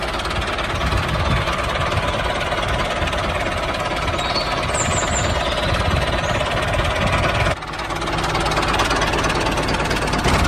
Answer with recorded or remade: recorded